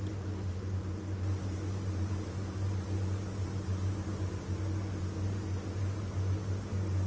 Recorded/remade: recorded